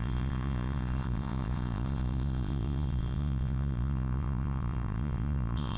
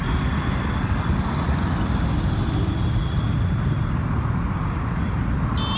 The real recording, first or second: second